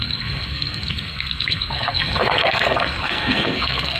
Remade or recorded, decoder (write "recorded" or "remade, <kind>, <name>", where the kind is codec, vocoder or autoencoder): remade, codec, SNAC